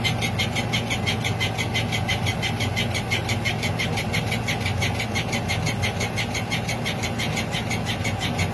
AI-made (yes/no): no